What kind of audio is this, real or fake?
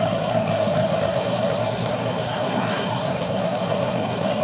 fake